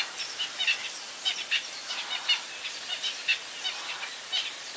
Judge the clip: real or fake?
real